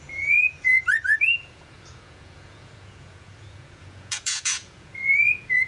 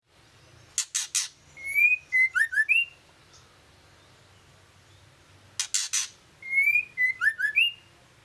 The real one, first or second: second